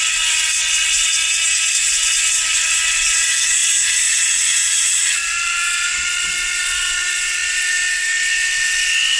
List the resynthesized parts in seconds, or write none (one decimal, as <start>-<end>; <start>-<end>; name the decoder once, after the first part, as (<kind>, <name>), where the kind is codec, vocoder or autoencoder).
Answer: 0.0-1.1 (vocoder, WaveNeXt); 1.7-9.2